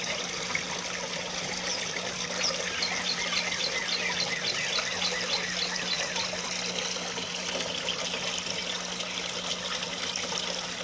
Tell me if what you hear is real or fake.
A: real